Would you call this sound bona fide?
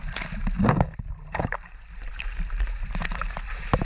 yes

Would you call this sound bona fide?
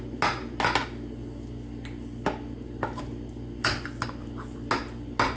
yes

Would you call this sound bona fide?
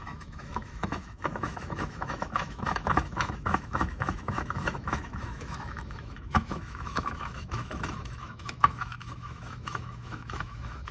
no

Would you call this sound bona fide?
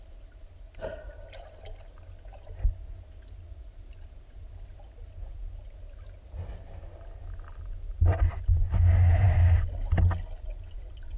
yes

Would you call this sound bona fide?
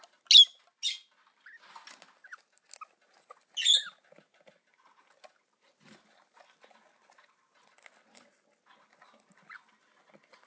yes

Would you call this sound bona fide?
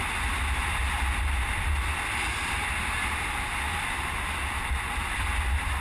yes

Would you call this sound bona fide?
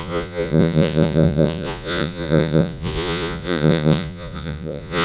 no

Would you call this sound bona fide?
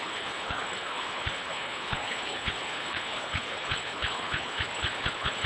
no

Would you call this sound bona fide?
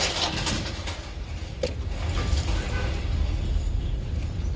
yes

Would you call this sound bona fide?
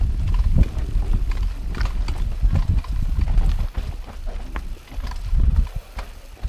yes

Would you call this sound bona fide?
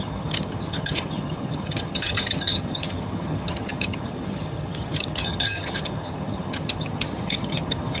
no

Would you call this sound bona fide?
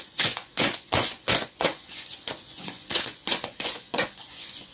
no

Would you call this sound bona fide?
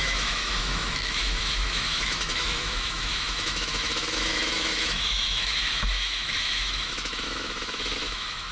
no